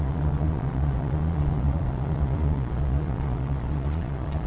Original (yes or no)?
no